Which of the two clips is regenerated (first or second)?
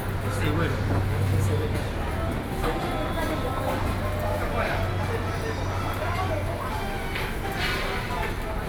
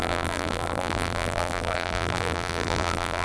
second